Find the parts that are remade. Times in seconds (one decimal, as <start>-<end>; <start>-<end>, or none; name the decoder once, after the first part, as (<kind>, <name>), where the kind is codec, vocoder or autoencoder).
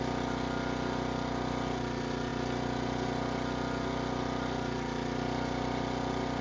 none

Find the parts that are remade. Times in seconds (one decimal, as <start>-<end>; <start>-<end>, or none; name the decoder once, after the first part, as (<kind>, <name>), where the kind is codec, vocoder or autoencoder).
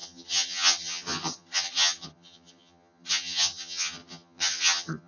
0.0-5.1 (vocoder, HiFi-GAN)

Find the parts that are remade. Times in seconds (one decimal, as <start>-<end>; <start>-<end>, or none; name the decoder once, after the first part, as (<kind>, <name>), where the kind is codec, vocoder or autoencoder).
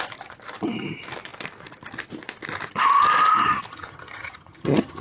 3.7-5.0 (vocoder, HiFi-GAN)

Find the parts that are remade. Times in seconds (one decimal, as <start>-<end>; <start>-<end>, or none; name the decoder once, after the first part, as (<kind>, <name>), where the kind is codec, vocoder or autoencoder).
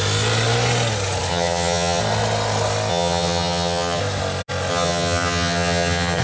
1.3-2.0 (vocoder, HiFi-GAN); 2.9-4.0; 4.7-6.2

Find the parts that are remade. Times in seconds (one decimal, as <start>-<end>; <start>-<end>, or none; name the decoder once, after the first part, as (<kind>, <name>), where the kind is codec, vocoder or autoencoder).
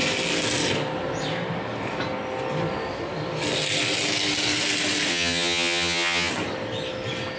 5.1-6.3 (vocoder, HiFi-GAN)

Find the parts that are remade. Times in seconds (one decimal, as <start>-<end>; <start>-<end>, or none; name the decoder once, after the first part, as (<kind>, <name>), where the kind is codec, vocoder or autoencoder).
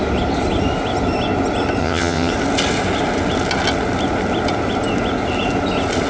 1.8-2.3 (vocoder, HiFi-GAN)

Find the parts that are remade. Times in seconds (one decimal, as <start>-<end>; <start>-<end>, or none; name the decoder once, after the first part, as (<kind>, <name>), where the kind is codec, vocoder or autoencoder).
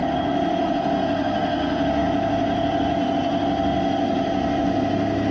none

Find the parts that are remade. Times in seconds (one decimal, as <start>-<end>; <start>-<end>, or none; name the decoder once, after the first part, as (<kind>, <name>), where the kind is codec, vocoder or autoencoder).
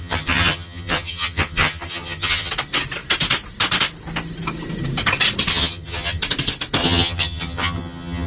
0.0-2.5 (vocoder, HiFi-GAN); 5.5-6.2; 6.8-8.3